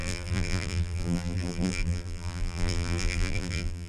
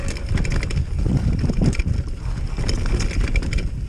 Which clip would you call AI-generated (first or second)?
first